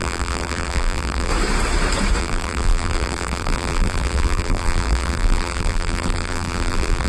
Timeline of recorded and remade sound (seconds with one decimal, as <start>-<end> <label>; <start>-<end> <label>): 0.0-1.3 remade; 1.3-2.2 recorded; 2.2-7.1 remade